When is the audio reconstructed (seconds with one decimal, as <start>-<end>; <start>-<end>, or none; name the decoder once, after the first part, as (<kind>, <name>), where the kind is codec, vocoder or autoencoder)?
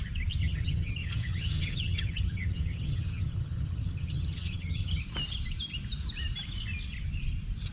0.4-5.0 (vocoder, HiFi-GAN)